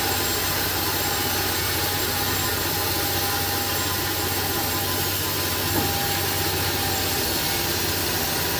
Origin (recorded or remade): recorded